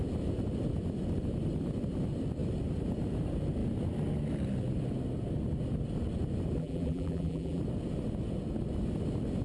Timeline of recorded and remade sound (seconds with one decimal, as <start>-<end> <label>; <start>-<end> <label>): 0.0-6.6 recorded; 6.6-7.6 remade; 7.6-9.4 recorded